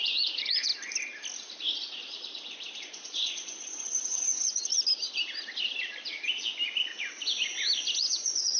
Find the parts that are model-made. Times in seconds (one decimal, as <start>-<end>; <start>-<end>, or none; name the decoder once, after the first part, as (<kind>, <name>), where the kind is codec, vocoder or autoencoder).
0.0-0.7 (vocoder, Vocos); 2.8-4.7; 8.0-8.6